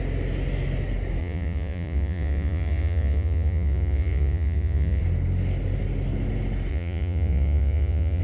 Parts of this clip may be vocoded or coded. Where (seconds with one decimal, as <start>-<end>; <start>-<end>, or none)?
1.2-5.0; 6.7-8.2

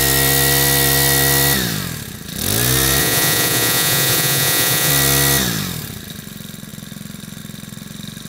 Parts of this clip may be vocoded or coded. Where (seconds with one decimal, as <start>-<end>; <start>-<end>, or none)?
3.0-4.9

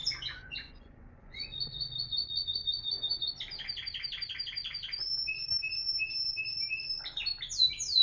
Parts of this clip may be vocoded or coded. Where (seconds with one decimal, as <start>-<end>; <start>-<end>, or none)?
0.0-3.3

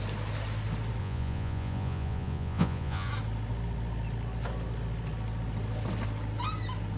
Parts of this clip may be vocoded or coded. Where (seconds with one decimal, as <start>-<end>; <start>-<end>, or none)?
1.0-3.1

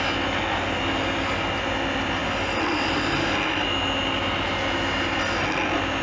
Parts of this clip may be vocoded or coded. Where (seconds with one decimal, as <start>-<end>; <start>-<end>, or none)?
none

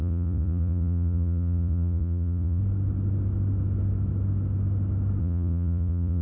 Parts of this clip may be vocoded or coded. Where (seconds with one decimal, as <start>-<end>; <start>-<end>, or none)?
0.0-2.6; 5.2-6.2